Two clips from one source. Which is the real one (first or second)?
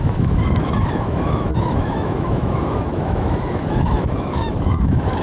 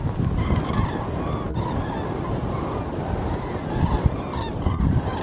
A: second